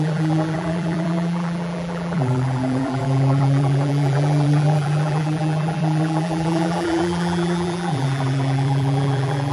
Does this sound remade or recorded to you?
remade